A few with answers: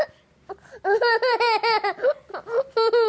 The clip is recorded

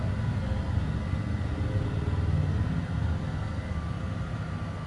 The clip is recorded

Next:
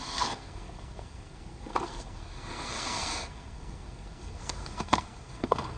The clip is remade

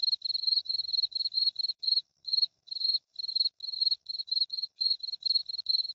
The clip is remade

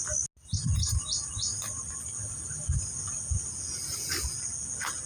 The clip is recorded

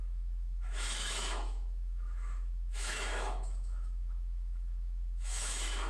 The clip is remade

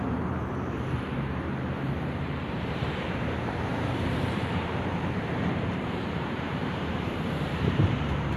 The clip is remade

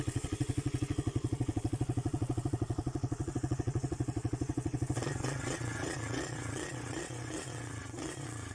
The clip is remade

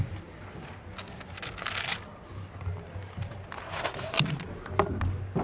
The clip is recorded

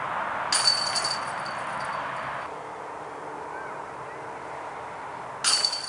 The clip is recorded